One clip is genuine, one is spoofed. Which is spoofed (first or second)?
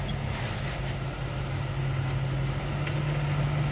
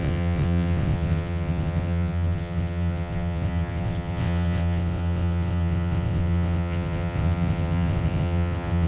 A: second